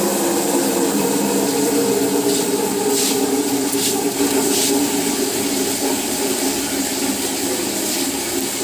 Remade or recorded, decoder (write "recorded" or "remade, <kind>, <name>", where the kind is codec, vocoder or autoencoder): remade, vocoder, BigVGAN v2